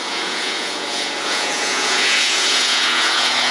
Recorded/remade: remade